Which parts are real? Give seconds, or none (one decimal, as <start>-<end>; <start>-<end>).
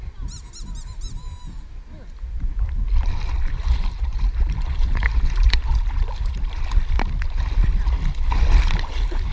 0.0-4.1; 6.3-9.3